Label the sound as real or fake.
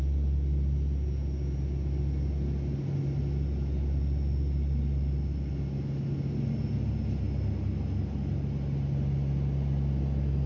real